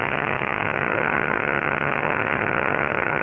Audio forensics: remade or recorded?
remade